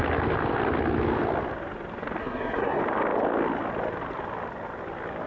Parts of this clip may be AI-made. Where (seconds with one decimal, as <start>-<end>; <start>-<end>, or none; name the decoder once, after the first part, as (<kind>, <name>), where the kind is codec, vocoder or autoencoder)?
2.2-2.8 (codec, SNAC)